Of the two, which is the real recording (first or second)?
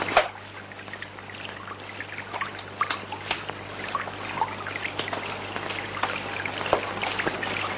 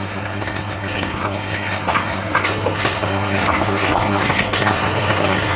first